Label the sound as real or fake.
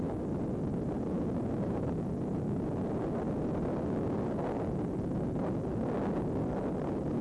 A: real